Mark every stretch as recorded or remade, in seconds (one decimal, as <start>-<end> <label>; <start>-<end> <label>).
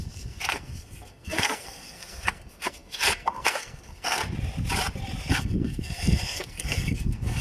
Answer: 0.0-4.2 remade; 4.2-5.3 recorded; 5.3-7.4 remade